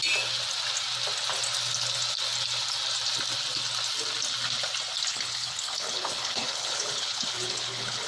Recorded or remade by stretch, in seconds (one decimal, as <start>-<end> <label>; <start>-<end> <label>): 0.0-5.1 recorded; 5.1-8.1 remade